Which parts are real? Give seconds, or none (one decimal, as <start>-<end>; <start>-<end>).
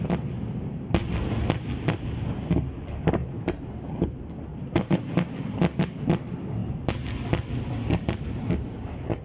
0.0-3.2; 3.9-4.5; 5.1-9.2